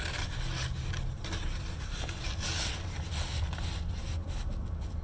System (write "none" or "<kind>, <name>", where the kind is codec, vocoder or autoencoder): none